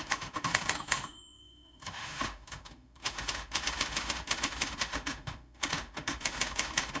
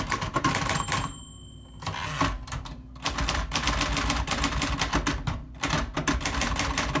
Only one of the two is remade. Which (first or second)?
first